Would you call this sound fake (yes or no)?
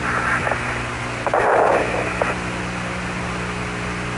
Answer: no